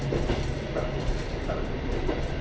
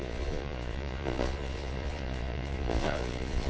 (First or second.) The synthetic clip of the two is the second